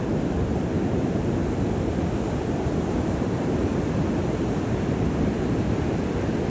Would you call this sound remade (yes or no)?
yes